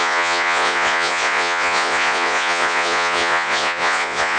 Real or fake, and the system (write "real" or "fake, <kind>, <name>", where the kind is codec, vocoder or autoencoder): fake, vocoder, Vocos